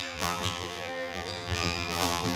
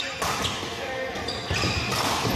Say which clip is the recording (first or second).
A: second